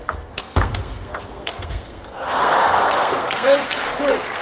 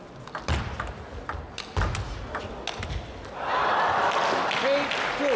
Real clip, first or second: second